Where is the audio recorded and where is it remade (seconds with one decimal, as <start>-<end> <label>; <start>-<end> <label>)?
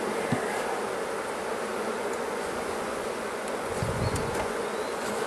0.0-1.7 recorded; 1.7-5.3 remade